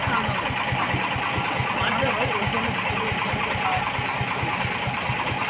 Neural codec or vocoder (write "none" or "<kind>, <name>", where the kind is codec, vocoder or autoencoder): none